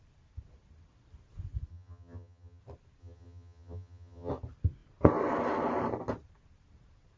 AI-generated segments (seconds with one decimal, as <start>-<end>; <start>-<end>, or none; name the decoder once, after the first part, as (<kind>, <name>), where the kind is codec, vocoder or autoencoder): 1.7-2.6 (vocoder, HiFi-GAN); 3.0-4.3